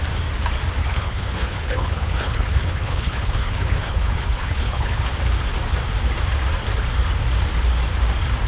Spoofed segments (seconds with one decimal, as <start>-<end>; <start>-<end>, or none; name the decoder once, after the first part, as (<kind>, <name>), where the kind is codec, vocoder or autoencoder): 0.8-5.1 (codec, HILCodec)